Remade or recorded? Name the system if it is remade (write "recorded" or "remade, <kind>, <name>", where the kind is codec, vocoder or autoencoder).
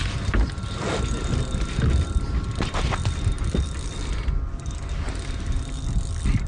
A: recorded